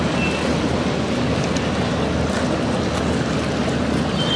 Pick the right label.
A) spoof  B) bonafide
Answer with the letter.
B